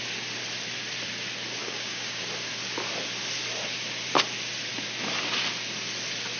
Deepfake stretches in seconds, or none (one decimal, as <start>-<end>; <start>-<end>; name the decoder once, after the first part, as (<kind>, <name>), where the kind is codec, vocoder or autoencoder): 1.6-2.2 (codec, DAC)